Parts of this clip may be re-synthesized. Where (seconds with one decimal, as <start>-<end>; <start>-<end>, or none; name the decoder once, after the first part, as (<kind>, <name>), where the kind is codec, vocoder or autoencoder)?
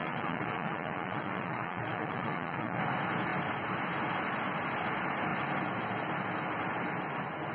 0.0-2.8 (vocoder, Vocos)